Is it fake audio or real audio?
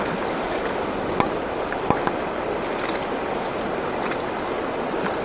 real